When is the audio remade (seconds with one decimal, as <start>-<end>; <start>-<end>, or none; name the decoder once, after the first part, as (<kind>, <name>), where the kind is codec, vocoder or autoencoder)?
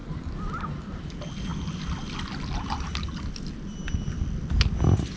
none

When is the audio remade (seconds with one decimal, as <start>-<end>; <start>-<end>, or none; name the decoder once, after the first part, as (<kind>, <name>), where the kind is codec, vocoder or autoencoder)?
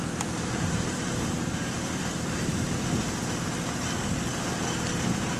0.0-3.2 (vocoder, BigVGAN v2)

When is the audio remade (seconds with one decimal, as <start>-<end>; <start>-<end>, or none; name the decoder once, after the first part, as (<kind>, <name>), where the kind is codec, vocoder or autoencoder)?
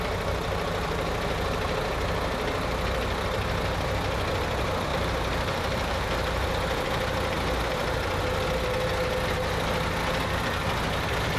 4.9-6.5 (vocoder, BigVGAN v2)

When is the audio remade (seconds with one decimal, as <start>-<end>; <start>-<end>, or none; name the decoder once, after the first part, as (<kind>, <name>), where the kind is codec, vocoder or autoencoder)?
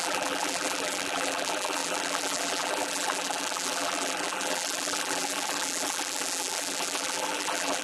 0.0-7.8 (vocoder, BigVGAN v2)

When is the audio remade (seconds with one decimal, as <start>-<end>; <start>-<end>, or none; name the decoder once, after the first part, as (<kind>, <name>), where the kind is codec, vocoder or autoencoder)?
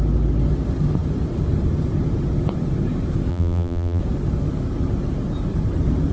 3.3-4.0 (vocoder, BigVGAN v2)